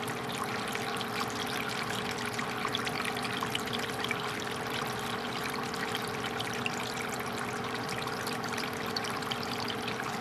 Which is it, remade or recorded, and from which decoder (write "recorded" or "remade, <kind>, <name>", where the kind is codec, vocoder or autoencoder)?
remade, vocoder, BigVGAN v2